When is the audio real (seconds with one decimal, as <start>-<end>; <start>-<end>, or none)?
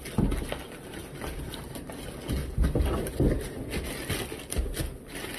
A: 0.0-1.0; 1.8-2.4; 3.1-5.4